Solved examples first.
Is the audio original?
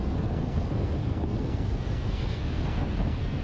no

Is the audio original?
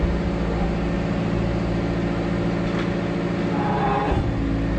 yes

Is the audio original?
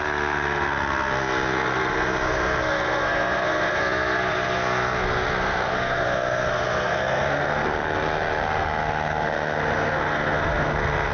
no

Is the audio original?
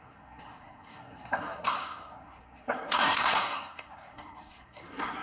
no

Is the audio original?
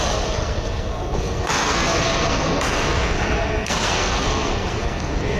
no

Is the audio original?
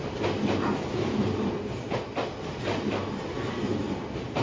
yes